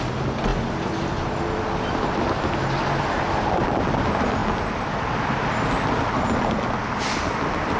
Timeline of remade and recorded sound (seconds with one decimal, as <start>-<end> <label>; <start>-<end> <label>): 0.0-7.8 recorded